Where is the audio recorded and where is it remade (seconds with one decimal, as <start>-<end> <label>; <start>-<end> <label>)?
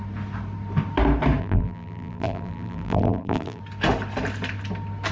0.0-1.4 recorded; 1.4-3.6 remade; 3.6-5.1 recorded